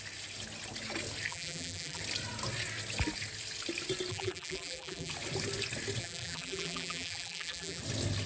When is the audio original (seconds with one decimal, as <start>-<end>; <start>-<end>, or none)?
0.0-1.3; 2.0-4.1; 5.1-6.0; 7.8-8.3